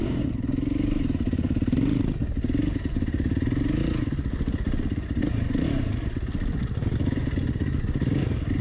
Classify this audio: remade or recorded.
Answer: recorded